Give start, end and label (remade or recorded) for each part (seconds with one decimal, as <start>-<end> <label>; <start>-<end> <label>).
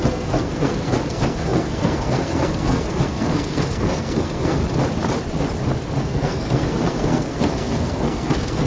0.0-4.6 remade; 4.6-6.0 recorded; 6.0-8.7 remade